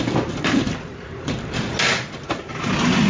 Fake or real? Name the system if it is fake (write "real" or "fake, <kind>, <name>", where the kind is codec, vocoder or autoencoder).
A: real